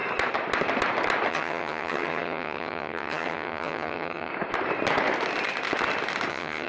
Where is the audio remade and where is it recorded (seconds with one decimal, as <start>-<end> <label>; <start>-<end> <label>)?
0.0-1.3 recorded; 1.3-4.3 remade; 4.3-6.3 recorded; 6.3-6.7 remade